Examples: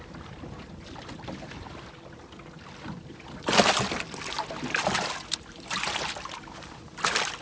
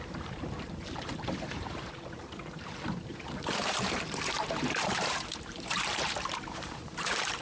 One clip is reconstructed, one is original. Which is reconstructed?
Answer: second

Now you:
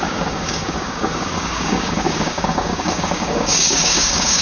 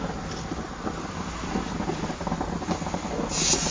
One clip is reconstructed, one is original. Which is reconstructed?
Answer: first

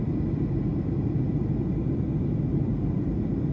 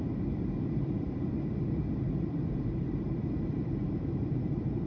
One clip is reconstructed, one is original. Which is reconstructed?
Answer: second